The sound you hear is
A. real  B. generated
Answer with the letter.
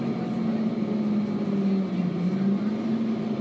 A